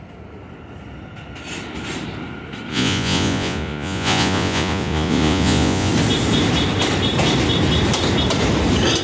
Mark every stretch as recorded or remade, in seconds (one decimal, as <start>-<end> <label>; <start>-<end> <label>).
0.0-2.7 recorded; 2.7-5.9 remade; 5.9-9.0 recorded